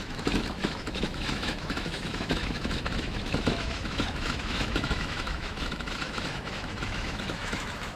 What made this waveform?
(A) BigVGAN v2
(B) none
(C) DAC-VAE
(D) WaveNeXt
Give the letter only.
C